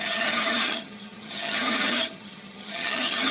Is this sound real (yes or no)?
no